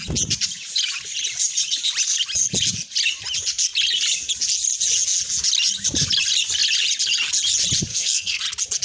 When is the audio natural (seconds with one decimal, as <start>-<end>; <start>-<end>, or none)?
0.0-7.9; 8.4-8.8